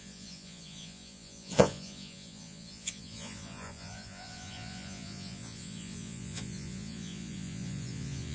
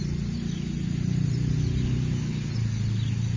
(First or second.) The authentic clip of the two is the second